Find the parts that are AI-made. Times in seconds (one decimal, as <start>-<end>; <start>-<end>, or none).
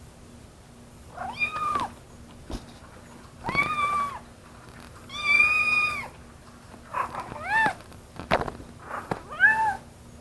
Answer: none